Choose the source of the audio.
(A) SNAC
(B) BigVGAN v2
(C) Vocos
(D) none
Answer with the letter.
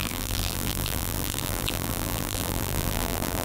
B